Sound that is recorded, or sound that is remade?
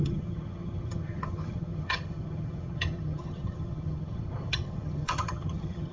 remade